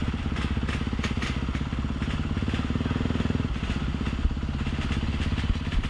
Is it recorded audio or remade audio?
recorded